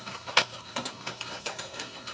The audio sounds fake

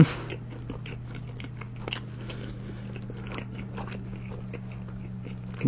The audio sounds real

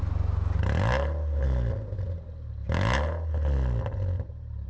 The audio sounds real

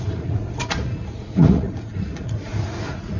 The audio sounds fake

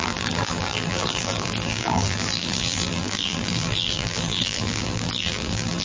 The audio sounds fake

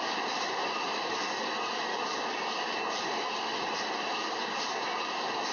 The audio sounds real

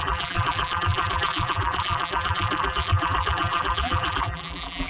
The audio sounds fake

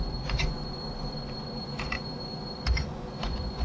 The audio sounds fake